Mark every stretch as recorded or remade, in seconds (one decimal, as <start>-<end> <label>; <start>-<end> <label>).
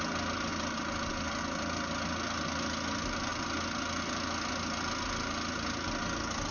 0.0-0.5 recorded; 0.5-1.4 remade; 1.4-6.5 recorded